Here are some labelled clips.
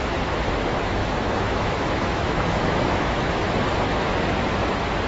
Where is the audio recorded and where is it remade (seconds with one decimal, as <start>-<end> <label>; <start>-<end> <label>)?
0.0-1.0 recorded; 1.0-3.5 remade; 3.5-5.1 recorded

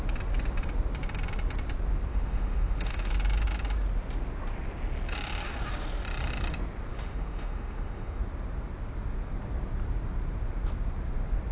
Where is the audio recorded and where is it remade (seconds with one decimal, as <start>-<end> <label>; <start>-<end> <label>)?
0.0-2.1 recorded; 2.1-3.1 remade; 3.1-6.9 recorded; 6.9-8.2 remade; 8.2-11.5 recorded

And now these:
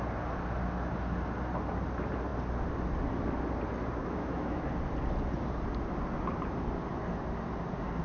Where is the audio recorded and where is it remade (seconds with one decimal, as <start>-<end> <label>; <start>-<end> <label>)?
0.0-4.0 recorded; 4.0-4.7 remade; 4.7-8.0 recorded